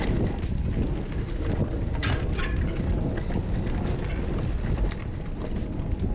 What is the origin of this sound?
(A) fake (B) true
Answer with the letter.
B